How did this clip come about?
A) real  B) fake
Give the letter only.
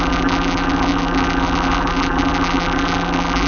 B